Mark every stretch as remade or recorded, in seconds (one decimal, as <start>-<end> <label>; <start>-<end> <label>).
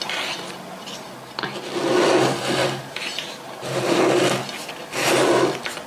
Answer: 0.0-2.6 recorded; 2.6-4.0 remade; 4.0-5.9 recorded